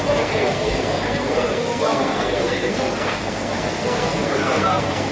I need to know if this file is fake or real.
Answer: fake